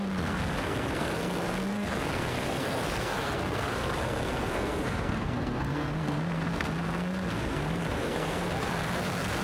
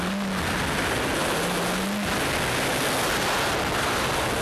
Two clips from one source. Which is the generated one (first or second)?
first